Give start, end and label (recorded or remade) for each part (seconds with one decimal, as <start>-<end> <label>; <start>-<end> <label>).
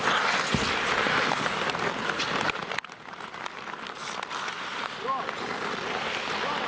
0.0-6.7 recorded